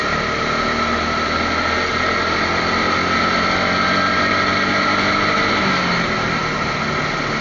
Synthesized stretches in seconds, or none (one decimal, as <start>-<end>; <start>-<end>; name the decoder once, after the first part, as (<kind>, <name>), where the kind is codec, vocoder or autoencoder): none